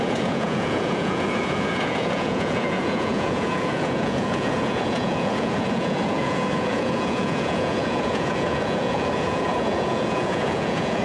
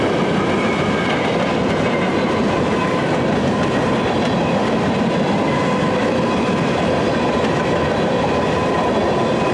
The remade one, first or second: first